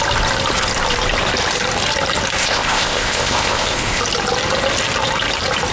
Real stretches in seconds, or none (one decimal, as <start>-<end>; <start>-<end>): 0.0-2.4; 4.0-5.7